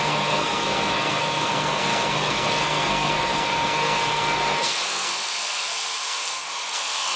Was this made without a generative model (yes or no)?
no